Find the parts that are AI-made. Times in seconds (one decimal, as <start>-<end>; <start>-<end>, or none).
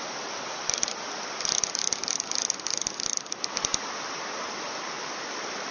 none